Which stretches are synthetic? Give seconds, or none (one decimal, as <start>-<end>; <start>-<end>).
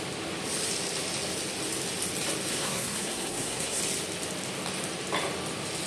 2.5-3.8